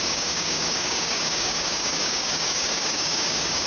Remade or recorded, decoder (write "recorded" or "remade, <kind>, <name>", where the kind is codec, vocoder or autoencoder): remade, codec, DAC